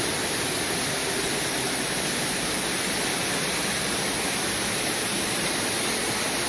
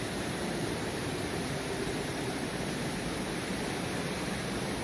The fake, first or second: second